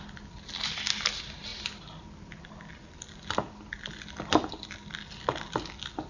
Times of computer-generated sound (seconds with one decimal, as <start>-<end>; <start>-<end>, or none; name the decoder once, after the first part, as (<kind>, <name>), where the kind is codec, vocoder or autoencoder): none